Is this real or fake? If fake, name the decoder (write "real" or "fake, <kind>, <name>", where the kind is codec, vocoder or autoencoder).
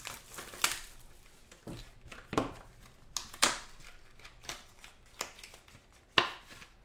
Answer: real